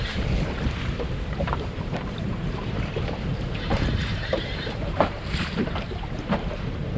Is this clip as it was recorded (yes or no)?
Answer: no